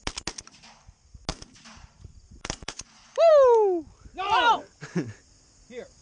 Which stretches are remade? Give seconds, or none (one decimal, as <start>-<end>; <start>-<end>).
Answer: 1.3-3.3